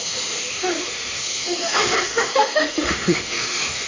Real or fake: fake